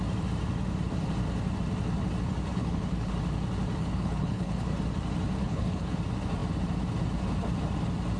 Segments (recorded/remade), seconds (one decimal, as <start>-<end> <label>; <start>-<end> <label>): 0.0-2.5 recorded; 2.5-3.1 remade; 3.1-3.8 recorded; 3.8-4.7 remade; 4.7-5.4 recorded; 5.4-6.0 remade; 6.0-8.2 recorded